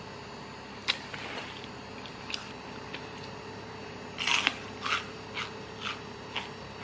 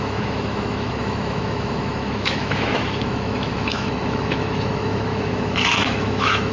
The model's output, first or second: second